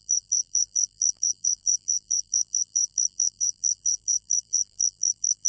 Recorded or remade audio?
remade